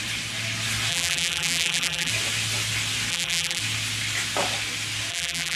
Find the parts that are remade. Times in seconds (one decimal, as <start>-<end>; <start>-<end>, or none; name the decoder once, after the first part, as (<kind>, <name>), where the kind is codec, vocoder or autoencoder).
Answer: 0.9-2.1 (vocoder, BigVGAN v2); 3.1-3.6; 5.1-5.6